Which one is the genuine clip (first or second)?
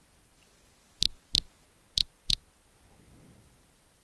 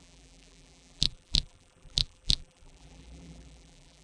first